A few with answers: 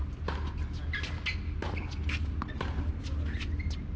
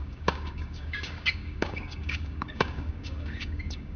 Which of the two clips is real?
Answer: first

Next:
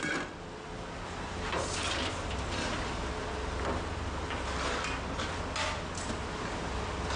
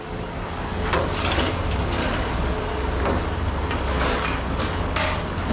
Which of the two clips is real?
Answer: first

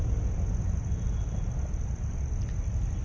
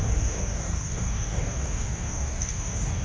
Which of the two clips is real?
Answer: first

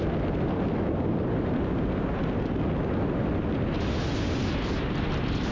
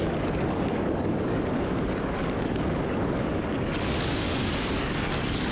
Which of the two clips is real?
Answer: first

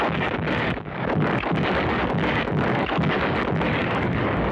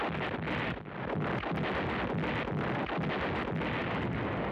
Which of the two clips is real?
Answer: second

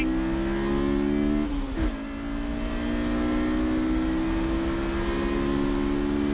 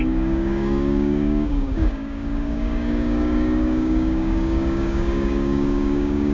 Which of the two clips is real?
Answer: first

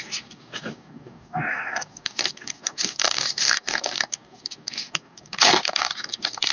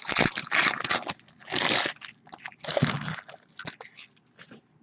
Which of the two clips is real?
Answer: second